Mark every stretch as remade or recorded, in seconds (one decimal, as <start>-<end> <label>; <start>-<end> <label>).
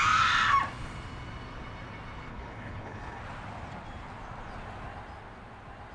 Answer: 0.0-2.3 recorded; 2.3-3.2 remade; 3.2-5.9 recorded